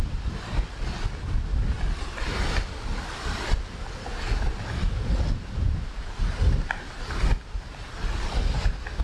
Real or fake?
real